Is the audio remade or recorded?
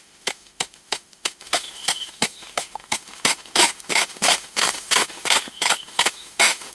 remade